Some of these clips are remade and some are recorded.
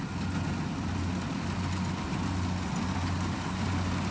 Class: recorded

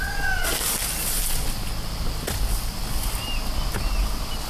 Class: recorded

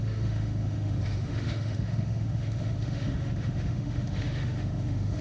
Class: remade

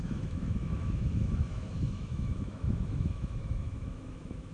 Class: remade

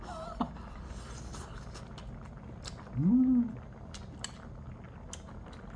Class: recorded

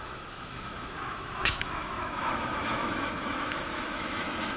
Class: remade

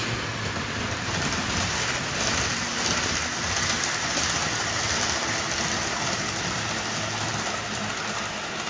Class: recorded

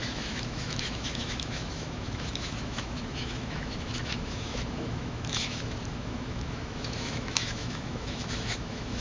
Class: remade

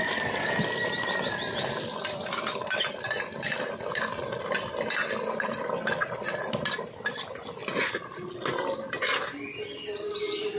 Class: recorded